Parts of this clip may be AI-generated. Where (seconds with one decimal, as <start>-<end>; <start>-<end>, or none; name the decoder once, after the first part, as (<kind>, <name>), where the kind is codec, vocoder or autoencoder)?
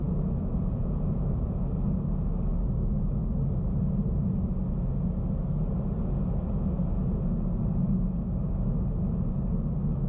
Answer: 0.6-1.6 (vocoder, Vocos)